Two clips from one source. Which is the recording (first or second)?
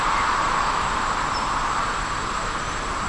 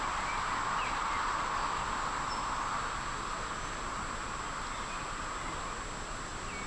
second